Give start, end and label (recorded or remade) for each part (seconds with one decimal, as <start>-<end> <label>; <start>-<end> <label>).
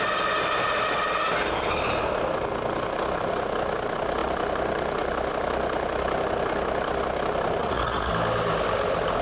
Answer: 0.0-7.6 recorded; 7.6-8.1 remade; 8.1-9.2 recorded